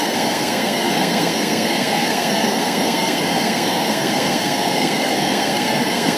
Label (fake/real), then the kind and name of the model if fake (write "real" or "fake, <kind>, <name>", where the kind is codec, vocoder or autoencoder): fake, codec, SNAC